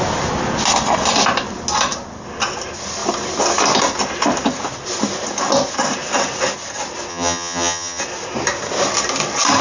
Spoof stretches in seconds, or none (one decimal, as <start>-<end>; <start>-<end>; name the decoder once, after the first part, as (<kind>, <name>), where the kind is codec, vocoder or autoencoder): 7.1-8.0 (vocoder, HiFi-GAN)